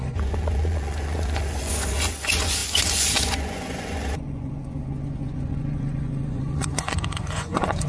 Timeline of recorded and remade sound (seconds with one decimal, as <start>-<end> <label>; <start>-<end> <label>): 0.0-7.9 remade